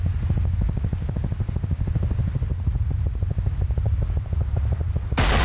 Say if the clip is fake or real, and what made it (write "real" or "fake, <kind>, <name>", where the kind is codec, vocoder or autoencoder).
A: real